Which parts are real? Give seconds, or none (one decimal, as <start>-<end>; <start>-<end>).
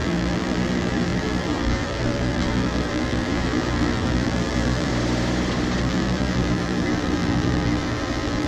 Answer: 4.9-5.8